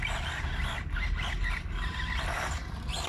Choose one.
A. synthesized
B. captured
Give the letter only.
B